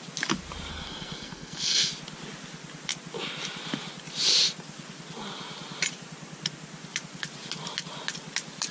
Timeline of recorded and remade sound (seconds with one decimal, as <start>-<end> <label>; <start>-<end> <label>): 0.0-0.7 recorded; 0.7-1.9 remade; 1.9-8.7 recorded